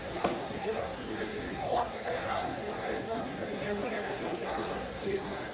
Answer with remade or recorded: remade